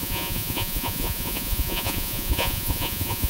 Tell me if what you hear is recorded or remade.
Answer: remade